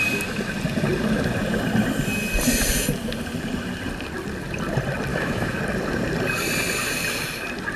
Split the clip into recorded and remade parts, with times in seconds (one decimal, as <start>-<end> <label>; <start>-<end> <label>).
0.0-5.1 recorded; 5.1-5.6 remade; 5.6-7.8 recorded